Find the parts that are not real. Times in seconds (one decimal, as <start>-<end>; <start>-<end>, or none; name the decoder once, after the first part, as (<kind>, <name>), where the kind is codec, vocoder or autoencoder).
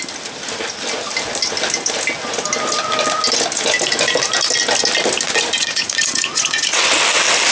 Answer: 5.6-6.8 (vocoder, Vocos)